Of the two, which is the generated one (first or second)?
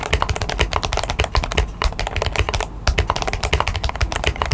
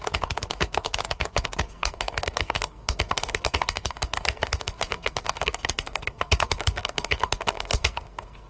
second